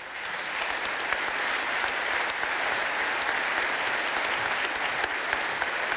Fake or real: real